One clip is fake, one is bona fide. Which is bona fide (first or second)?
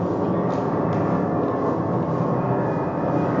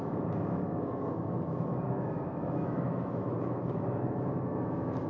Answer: first